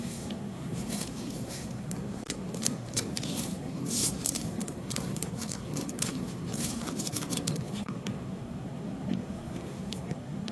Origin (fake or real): fake